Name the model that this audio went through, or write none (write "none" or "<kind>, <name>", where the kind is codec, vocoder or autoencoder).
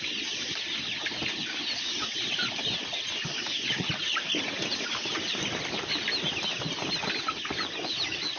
none